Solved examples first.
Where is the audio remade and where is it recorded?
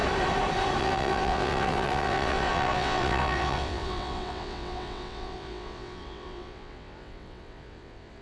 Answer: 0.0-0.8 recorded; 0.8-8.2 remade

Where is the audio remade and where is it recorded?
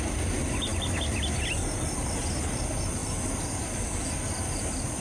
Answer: 0.0-5.0 recorded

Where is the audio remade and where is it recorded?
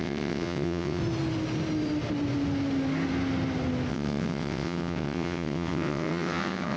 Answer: 0.0-1.0 remade; 1.0-3.9 recorded; 3.9-6.8 remade